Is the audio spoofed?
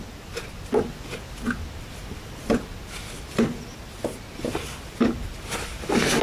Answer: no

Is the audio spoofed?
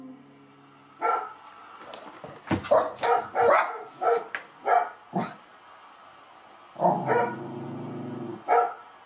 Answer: no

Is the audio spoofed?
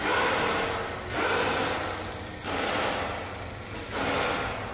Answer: no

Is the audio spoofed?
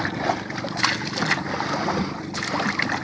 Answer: no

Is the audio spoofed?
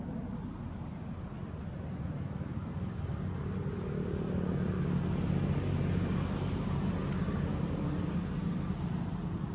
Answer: no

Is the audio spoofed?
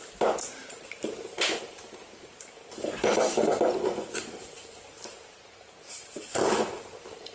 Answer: yes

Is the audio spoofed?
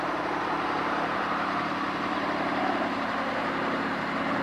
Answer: no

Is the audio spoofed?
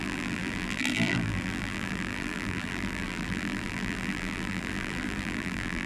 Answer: yes